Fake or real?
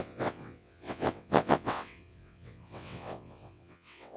fake